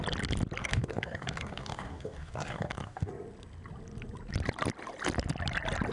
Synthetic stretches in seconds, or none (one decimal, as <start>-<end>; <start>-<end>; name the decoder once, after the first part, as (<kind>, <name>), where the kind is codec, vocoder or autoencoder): 0.6-3.1 (codec, DAC)